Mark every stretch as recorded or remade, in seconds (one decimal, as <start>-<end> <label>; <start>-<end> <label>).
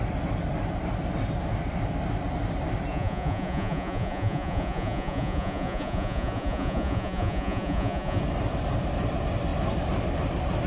0.0-2.9 recorded; 2.9-8.2 remade; 8.2-10.7 recorded